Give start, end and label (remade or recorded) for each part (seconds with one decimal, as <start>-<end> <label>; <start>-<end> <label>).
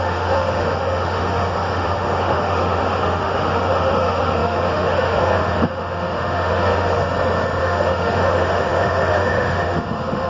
0.0-7.0 remade; 7.0-7.6 recorded; 7.6-10.3 remade